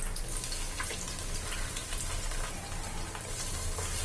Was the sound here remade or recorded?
recorded